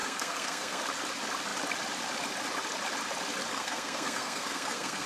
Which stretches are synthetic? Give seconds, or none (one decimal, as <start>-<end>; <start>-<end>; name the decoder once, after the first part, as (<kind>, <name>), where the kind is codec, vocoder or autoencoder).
0.0-0.8 (codec, SNAC); 3.5-5.1

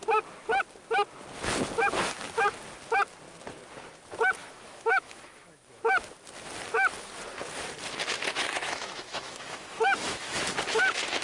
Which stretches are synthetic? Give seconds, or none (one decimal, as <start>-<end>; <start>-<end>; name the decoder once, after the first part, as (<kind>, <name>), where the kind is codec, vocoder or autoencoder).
4.4-5.8 (autoencoder, DAC-VAE); 8.3-10.5

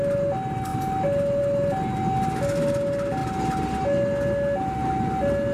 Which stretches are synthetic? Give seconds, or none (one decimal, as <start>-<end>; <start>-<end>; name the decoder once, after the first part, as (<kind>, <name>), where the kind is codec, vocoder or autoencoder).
none

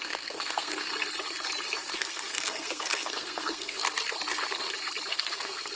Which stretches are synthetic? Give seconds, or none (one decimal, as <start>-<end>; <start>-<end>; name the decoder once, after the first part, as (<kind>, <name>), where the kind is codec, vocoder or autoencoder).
0.0-0.9 (codec, SNAC); 1.9-3.8; 5.1-5.8

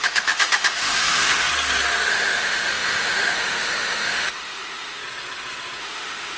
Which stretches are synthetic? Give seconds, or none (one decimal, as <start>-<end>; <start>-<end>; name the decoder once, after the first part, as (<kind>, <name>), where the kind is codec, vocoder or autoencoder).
0.0-1.5 (autoencoder, DAC-VAE); 2.1-5.0; 5.8-6.4

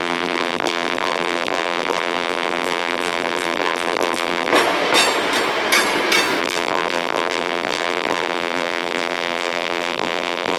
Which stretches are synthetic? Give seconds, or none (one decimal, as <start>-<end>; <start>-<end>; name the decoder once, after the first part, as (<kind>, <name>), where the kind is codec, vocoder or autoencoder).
0.0-4.5 (vocoder, BigVGAN v2); 6.4-10.6